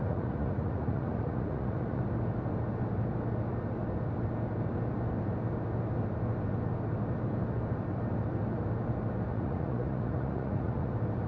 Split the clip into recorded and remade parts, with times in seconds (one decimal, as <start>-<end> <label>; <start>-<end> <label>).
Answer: 0.0-2.0 remade; 2.0-9.3 recorded; 9.3-10.9 remade; 10.9-11.3 recorded

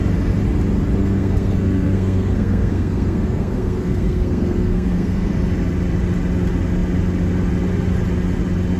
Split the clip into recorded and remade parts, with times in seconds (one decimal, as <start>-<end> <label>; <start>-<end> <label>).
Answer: 0.0-1.0 recorded; 1.0-5.3 remade; 5.3-8.8 recorded

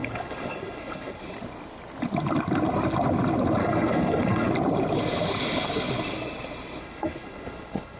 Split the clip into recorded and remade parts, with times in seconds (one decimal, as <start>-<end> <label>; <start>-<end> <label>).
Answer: 0.0-1.2 remade; 1.2-3.6 recorded; 3.6-4.5 remade; 4.5-6.8 recorded; 6.8-8.0 remade

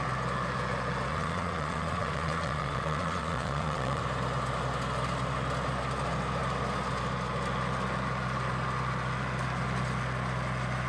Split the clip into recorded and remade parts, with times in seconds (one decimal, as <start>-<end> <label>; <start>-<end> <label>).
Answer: 0.0-1.1 recorded; 1.1-4.0 remade; 4.0-10.9 recorded

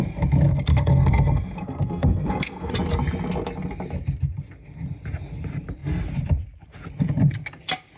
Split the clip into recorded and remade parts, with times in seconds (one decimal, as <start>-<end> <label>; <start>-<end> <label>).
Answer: 0.0-0.7 recorded; 0.7-2.7 remade; 2.7-8.0 recorded